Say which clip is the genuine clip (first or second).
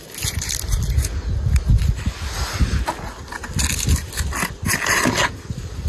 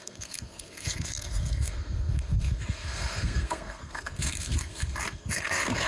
first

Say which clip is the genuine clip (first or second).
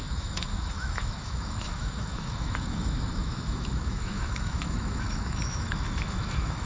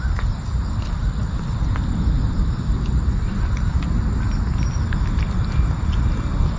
second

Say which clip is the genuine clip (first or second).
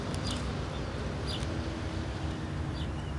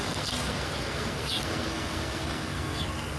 first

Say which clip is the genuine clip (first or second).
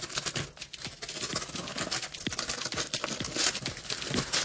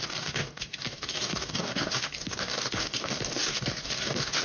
first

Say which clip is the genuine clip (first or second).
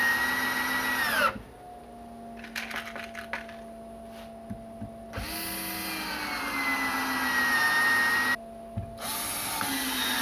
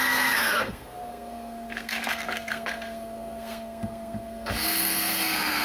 first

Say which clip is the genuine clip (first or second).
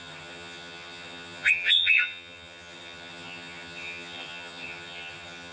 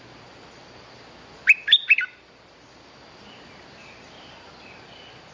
second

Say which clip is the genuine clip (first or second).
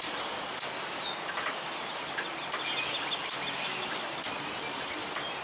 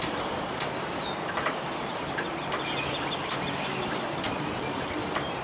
first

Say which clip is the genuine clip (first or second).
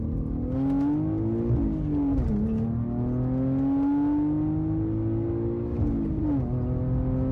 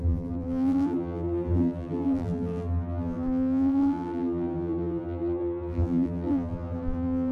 first